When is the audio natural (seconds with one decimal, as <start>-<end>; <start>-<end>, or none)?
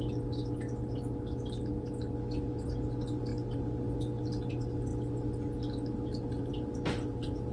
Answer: 0.0-7.5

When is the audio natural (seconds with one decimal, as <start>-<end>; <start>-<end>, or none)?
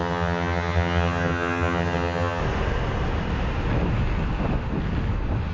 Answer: 2.4-5.5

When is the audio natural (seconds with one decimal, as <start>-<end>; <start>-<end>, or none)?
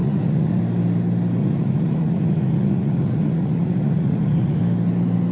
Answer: 0.6-1.4; 4.6-5.3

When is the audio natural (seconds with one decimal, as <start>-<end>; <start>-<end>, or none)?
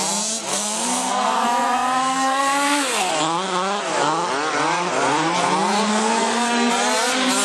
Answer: 0.0-0.5; 3.1-5.9; 6.7-7.4